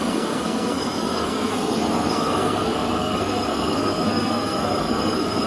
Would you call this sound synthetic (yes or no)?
yes